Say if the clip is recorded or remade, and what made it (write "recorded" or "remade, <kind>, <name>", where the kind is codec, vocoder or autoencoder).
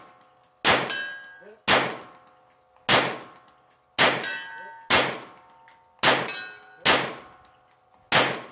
recorded